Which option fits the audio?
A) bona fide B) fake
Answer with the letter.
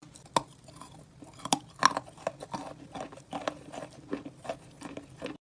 A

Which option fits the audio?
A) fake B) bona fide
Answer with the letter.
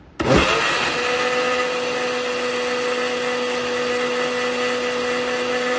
B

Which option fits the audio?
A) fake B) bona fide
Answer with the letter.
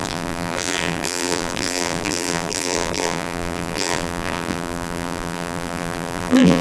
A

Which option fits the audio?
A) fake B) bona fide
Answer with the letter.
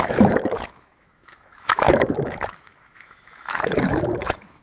A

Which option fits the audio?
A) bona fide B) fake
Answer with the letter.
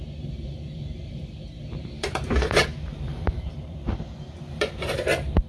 B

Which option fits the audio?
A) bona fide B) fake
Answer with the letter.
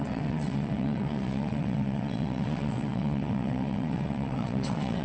B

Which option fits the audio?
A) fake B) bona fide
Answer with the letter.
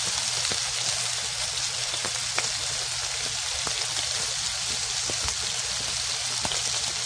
B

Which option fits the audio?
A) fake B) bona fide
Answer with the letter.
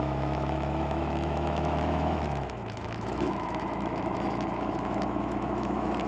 A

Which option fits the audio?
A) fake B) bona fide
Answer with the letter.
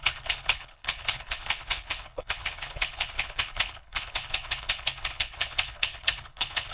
A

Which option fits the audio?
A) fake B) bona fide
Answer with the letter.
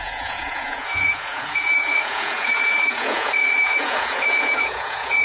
A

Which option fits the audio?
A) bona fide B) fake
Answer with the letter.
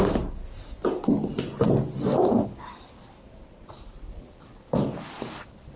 A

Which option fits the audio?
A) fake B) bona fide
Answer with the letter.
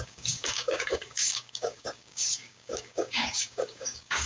A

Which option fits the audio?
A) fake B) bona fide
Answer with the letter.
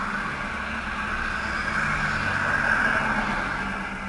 B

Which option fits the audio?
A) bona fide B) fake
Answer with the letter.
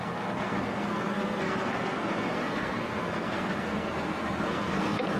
B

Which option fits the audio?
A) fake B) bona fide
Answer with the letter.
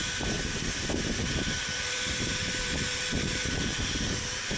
A